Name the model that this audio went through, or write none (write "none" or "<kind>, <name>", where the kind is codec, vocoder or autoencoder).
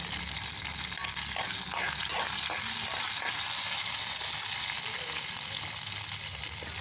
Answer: none